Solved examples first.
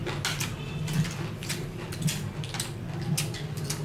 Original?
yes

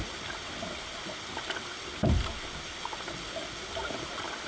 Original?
yes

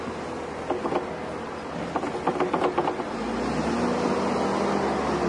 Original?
yes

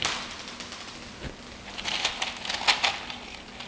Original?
yes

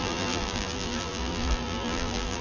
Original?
no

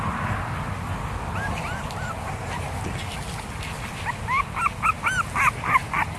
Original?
yes